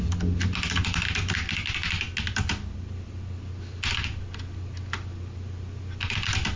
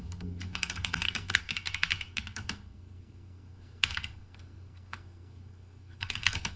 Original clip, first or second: first